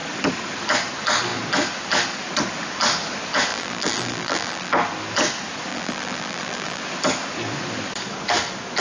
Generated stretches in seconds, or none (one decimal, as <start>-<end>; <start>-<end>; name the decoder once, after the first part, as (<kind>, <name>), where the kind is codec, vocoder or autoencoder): 3.5-4.7 (vocoder, BigVGAN v2); 5.7-6.8